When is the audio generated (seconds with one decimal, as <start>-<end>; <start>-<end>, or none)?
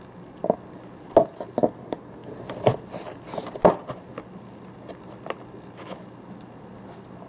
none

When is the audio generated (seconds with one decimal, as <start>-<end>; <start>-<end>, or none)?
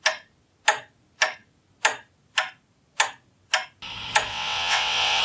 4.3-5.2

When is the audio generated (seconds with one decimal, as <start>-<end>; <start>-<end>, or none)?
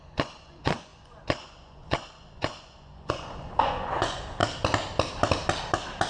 0.0-4.4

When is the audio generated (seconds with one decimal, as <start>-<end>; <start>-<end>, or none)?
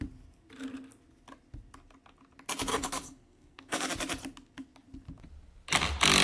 2.7-3.9